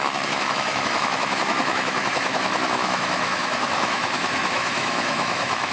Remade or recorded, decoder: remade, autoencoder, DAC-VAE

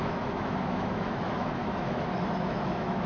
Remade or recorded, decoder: remade, autoencoder, DAC-VAE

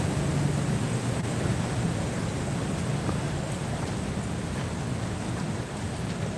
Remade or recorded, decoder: recorded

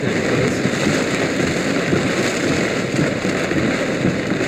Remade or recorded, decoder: recorded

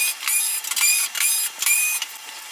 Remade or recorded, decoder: recorded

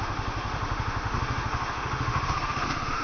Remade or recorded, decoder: remade, autoencoder, DAC-VAE